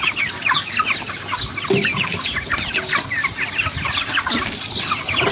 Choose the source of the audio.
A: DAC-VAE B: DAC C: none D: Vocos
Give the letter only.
C